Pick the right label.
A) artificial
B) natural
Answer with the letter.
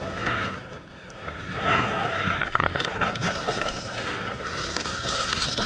A